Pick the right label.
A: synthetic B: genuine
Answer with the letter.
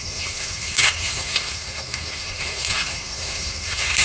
A